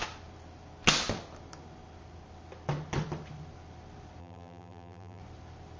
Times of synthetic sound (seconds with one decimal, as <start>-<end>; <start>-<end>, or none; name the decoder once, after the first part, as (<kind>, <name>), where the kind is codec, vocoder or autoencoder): 4.2-5.2 (vocoder, BigVGAN v2)